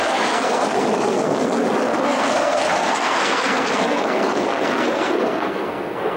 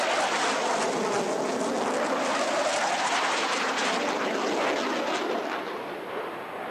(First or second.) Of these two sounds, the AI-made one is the first